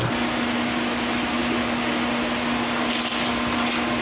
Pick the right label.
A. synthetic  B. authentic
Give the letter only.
B